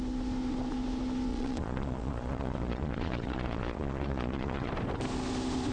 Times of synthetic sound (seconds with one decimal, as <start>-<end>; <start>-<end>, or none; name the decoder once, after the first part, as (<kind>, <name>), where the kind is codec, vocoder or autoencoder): 1.3-4.7 (vocoder, Vocos)